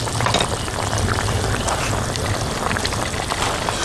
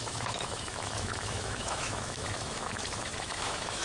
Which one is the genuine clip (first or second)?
first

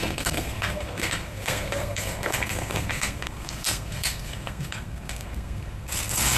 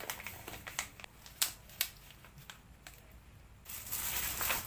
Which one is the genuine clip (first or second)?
second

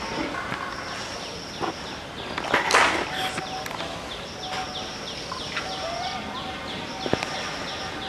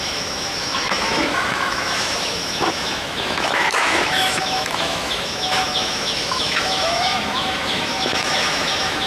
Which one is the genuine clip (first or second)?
first